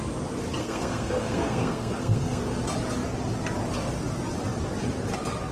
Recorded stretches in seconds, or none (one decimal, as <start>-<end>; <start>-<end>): 0.0-0.6; 2.4-5.5